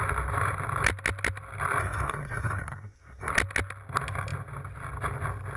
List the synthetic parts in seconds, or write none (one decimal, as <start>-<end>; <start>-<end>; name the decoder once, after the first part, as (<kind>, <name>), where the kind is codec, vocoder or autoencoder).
1.8-3.3 (codec, SNAC)